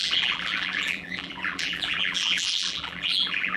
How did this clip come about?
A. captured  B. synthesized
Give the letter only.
B